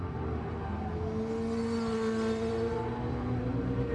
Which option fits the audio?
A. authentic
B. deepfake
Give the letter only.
A